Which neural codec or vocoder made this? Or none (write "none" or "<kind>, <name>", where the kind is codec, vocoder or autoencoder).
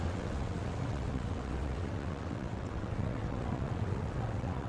vocoder, WaveNeXt